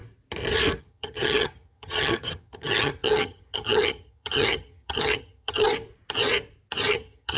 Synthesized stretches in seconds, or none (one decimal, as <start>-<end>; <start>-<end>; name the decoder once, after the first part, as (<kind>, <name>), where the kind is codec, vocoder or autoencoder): 0.8-5.7 (vocoder, HiFi-GAN); 6.9-7.4